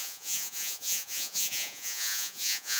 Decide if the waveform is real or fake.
fake